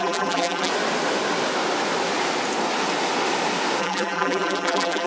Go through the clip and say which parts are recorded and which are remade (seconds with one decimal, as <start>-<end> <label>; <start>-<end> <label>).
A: 0.0-0.7 remade; 0.7-3.8 recorded; 3.8-5.1 remade